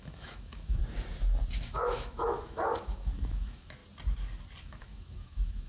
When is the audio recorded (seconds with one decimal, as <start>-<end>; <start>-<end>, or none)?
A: 0.8-1.6; 3.8-4.6